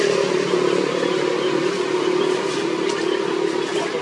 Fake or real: real